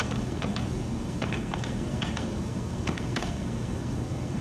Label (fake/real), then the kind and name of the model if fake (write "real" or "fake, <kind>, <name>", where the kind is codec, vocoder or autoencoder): fake, codec, SNAC